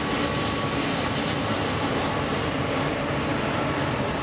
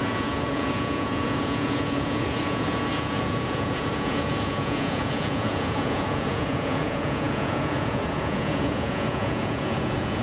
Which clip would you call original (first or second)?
first